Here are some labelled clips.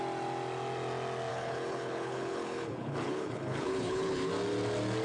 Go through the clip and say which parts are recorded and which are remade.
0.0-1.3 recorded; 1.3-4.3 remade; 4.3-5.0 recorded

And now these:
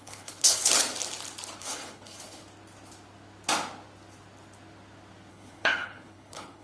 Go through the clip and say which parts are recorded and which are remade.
0.0-0.7 remade; 0.7-1.6 recorded; 1.6-2.4 remade; 2.4-5.3 recorded; 5.3-6.6 remade

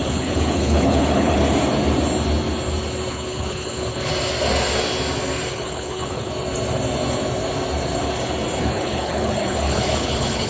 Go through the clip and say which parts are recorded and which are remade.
0.0-1.4 remade; 1.4-3.1 recorded; 3.1-4.1 remade; 4.1-5.5 recorded; 5.5-6.3 remade; 6.3-8.6 recorded; 8.6-10.5 remade

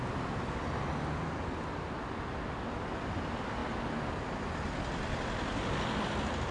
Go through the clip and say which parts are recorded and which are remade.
0.0-6.5 recorded

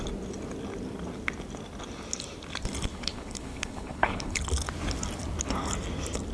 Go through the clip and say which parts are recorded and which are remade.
0.0-2.9 recorded; 2.9-4.4 remade; 4.4-6.3 recorded

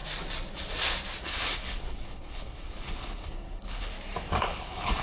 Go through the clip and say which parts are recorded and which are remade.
0.0-1.2 recorded; 1.2-3.9 remade; 3.9-4.4 recorded; 4.4-5.0 remade